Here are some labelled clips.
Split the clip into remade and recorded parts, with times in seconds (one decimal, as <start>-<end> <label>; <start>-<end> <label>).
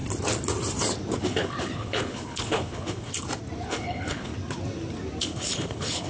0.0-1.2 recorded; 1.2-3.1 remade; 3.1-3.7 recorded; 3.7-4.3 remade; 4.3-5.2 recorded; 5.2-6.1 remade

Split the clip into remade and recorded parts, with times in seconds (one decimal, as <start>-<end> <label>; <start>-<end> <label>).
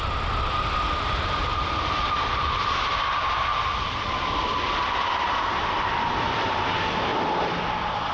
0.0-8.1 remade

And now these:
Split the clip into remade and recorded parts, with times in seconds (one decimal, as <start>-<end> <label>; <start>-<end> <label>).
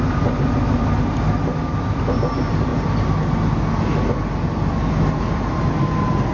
0.0-6.3 recorded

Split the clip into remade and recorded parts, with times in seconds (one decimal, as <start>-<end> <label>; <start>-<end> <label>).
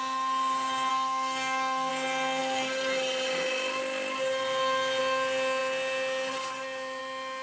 0.0-0.9 recorded; 0.9-1.9 remade; 1.9-7.4 recorded